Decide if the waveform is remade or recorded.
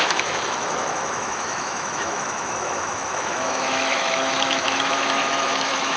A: remade